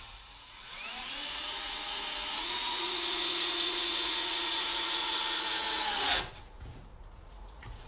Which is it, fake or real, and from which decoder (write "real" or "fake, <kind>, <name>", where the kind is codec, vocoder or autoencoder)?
fake, vocoder, Vocos